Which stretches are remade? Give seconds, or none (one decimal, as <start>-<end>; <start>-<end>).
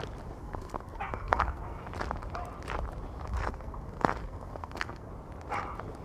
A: 0.4-1.8; 3.3-5.1